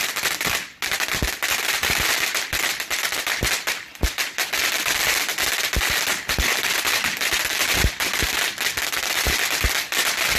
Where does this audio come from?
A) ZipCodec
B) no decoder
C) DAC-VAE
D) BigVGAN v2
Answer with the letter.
B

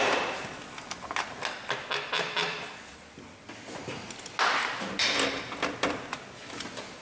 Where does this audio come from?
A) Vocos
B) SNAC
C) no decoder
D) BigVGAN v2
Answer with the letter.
C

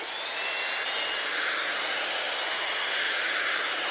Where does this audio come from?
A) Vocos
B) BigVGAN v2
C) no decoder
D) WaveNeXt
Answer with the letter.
C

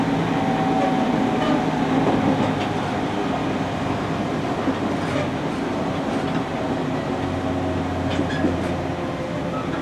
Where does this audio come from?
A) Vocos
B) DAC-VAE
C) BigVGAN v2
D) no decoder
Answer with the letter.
D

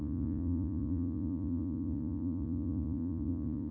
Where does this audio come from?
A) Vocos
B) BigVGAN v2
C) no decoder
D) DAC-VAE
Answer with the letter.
A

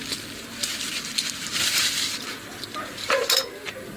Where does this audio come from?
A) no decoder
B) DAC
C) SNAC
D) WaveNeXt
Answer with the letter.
A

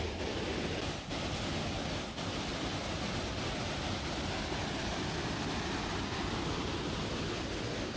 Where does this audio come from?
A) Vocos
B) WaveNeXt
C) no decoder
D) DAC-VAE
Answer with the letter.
C